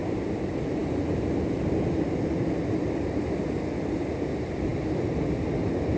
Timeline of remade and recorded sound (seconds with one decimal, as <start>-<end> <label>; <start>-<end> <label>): 0.0-6.0 recorded